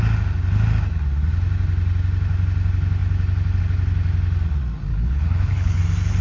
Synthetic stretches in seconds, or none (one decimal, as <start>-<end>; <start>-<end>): 4.9-5.8